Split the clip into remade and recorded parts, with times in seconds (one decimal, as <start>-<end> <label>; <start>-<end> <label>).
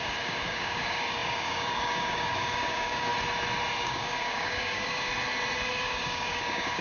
0.0-3.1 remade; 3.1-3.8 recorded; 3.8-5.1 remade; 5.1-5.7 recorded; 5.7-6.8 remade